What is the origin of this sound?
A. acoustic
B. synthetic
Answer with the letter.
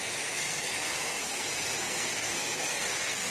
B